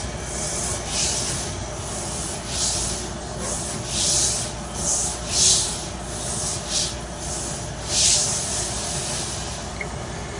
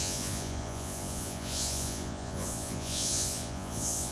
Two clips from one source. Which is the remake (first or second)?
second